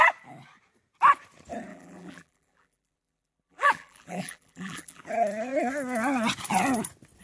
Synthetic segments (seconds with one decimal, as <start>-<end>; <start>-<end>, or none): 1.7-5.0

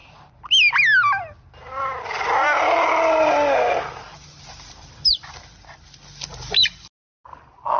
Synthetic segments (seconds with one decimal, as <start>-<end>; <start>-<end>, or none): none

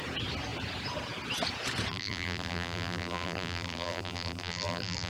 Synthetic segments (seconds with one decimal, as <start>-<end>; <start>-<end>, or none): 1.9-5.1

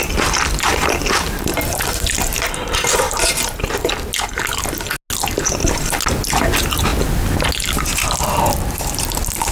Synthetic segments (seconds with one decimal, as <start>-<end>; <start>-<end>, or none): 0.7-3.9

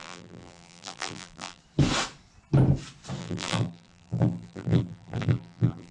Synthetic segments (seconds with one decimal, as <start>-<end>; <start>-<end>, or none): 0.0-1.6; 3.2-5.9

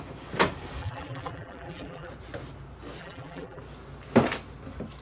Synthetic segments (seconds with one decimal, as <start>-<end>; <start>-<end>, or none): 0.8-2.1; 3.0-3.6